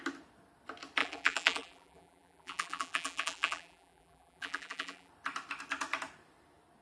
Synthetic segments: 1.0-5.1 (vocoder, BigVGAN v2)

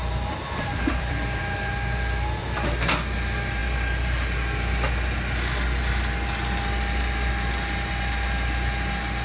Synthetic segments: 0.0-1.4 (vocoder, BigVGAN v2)

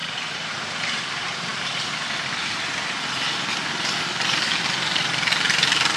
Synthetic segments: 0.0-1.0 (vocoder, BigVGAN v2)

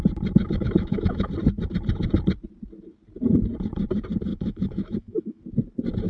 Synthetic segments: 0.4-1.3 (autoencoder, DAC-VAE); 4.3-5.4